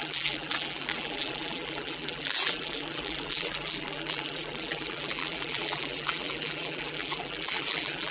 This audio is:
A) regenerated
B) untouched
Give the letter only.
A